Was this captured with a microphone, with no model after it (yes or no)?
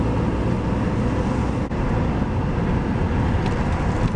yes